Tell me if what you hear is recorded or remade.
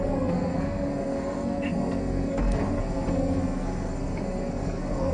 remade